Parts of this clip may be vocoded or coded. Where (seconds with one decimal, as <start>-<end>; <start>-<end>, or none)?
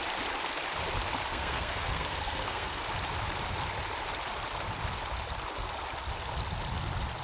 1.3-2.8